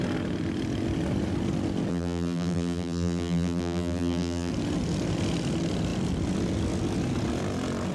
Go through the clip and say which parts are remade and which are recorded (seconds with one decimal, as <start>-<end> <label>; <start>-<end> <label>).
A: 0.0-1.9 recorded; 1.9-4.5 remade; 4.5-7.9 recorded